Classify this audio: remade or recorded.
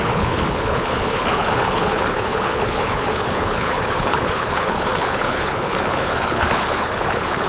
remade